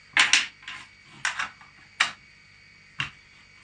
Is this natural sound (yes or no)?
yes